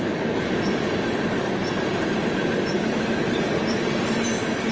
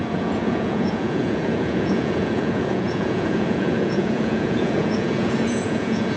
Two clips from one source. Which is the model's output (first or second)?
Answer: second